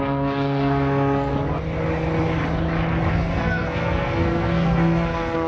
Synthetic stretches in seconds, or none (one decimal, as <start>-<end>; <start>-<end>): 0.0-1.3; 3.1-5.5